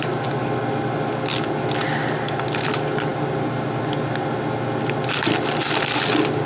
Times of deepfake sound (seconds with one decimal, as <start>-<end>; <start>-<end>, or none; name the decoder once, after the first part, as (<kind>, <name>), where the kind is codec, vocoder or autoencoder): none